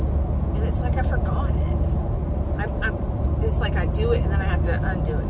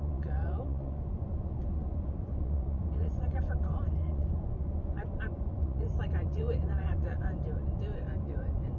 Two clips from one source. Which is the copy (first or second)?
second